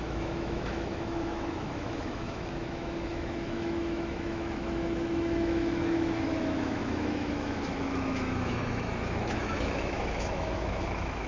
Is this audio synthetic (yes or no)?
yes